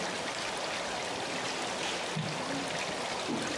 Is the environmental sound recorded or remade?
recorded